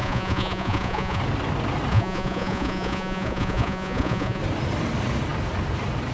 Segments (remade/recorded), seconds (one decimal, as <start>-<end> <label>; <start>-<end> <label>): 0.0-1.2 remade; 1.2-1.9 recorded; 1.9-4.4 remade; 4.4-6.1 recorded